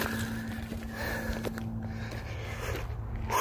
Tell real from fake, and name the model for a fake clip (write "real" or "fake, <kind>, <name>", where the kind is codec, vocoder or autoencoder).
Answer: real